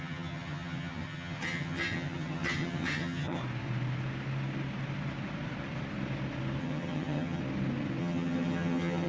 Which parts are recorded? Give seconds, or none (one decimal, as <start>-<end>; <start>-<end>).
3.4-6.6; 7.4-8.0